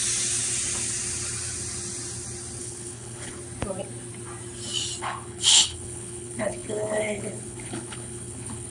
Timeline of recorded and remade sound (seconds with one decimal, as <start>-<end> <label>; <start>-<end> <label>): 0.0-2.6 recorded; 2.6-3.4 remade; 3.4-5.0 recorded; 5.0-8.7 remade